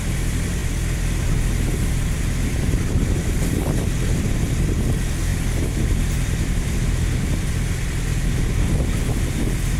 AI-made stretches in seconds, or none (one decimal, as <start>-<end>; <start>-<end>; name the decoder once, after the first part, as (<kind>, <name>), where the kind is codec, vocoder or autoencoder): 0.0-9.8 (vocoder, BigVGAN v2)